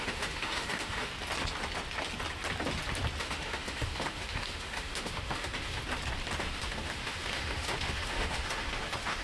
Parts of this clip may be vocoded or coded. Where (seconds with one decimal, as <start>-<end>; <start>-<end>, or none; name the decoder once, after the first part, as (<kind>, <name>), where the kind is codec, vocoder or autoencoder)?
0.0-1.1 (autoencoder, DAC-VAE); 3.2-5.8; 6.4-9.2